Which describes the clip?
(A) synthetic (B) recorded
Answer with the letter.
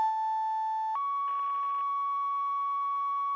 B